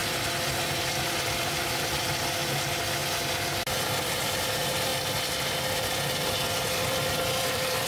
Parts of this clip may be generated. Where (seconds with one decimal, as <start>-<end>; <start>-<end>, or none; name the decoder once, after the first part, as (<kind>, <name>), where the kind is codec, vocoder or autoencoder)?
0.0-3.0 (vocoder, BigVGAN v2); 3.8-4.9; 6.8-7.9